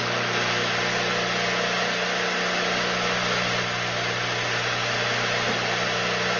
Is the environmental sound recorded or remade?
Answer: recorded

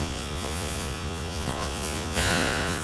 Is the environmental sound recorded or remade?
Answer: remade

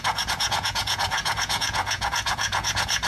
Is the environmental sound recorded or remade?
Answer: remade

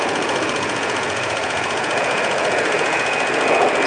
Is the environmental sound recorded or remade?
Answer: remade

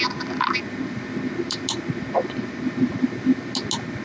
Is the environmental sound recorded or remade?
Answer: recorded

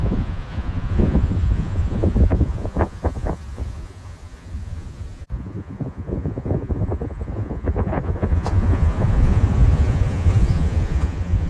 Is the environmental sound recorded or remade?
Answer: remade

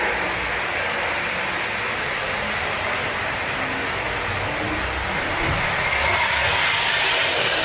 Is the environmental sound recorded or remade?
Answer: recorded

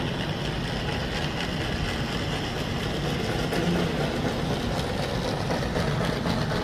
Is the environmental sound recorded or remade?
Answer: recorded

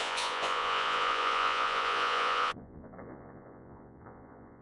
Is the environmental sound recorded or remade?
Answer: remade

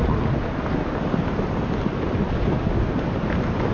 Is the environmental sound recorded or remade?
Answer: recorded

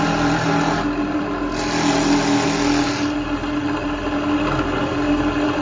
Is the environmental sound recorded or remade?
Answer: recorded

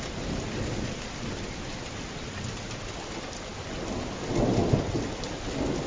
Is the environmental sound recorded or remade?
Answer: recorded